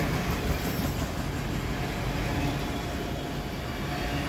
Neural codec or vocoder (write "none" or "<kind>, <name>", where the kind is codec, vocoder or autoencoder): none